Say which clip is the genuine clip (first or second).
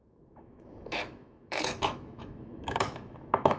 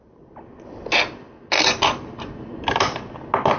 second